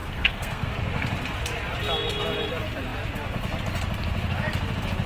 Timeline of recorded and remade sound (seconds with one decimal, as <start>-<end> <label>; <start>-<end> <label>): 0.0-0.7 remade; 0.7-5.1 recorded